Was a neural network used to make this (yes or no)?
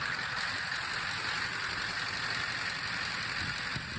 no